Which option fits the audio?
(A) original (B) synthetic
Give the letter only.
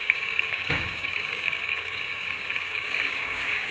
B